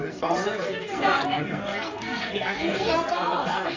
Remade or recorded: remade